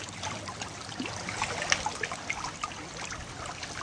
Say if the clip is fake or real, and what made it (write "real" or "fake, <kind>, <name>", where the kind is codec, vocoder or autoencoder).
real